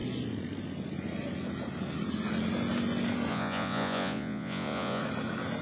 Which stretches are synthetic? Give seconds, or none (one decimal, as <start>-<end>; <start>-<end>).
3.3-5.0